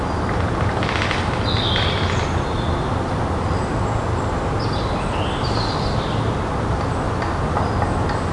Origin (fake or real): real